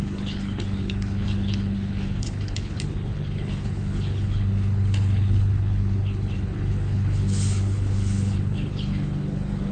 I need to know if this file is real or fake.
fake